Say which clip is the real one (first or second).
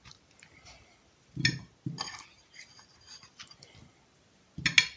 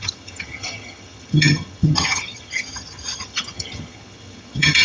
first